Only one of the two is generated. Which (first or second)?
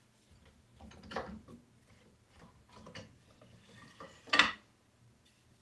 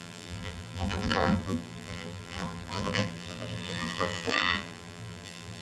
second